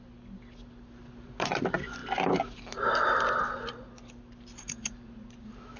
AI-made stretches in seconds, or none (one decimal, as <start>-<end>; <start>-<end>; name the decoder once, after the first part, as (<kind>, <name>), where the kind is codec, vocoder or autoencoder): none